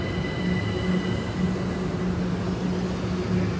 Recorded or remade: recorded